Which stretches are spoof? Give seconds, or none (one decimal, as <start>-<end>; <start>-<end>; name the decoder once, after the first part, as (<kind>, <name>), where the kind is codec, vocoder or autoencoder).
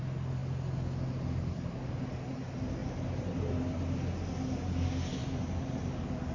2.8-3.3 (vocoder, BigVGAN v2); 5.2-5.8